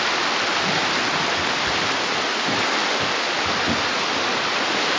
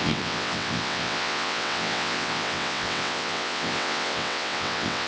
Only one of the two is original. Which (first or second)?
first